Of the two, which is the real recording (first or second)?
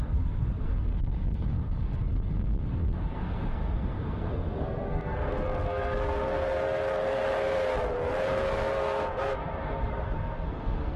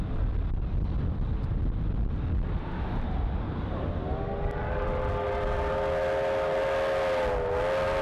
second